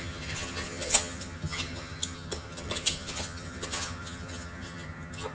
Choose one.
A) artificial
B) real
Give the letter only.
A